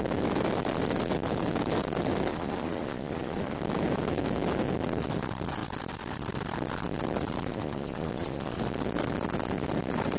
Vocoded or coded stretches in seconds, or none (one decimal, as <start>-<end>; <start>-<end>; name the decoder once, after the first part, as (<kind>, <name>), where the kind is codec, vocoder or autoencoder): 2.3-3.6 (vocoder, Vocos); 7.5-8.6